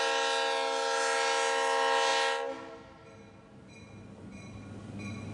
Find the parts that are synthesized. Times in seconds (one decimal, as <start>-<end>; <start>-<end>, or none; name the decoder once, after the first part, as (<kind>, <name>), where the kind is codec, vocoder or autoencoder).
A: none

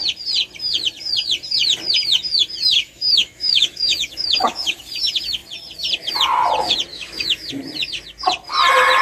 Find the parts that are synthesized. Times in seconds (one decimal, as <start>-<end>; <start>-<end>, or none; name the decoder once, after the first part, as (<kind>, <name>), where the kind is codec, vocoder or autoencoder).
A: 2.6-4.8 (autoencoder, DAC-VAE); 6.9-7.5

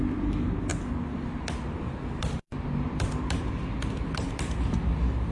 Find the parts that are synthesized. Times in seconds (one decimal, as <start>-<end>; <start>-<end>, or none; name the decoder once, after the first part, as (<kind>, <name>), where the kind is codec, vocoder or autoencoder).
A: none

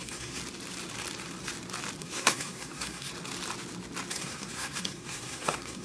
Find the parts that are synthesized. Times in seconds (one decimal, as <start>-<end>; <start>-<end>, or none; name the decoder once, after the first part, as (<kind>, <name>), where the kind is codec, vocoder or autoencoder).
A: 0.0-0.4 (codec, SNAC); 2.0-3.1; 4.1-5.8

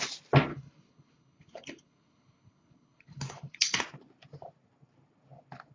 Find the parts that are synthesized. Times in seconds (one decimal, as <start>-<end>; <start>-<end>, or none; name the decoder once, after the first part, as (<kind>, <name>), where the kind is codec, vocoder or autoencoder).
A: 0.5-3.8 (codec, HILCodec)

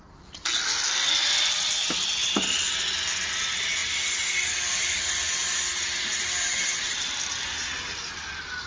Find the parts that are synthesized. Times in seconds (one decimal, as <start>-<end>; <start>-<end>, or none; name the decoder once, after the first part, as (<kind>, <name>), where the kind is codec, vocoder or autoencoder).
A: none

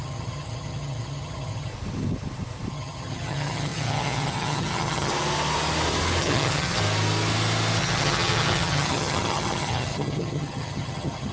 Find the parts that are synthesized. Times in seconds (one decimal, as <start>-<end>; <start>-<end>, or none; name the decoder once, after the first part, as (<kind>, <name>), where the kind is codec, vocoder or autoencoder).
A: 0.0-1.7 (vocoder, HiFi-GAN); 2.7-5.1; 6.2-6.8; 7.8-11.3